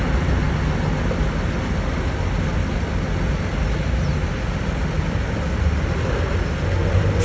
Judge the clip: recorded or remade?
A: recorded